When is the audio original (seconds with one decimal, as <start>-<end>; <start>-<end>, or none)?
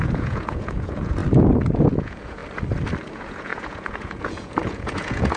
1.2-2.0; 2.4-3.1